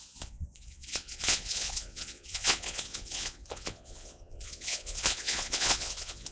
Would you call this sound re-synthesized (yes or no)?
yes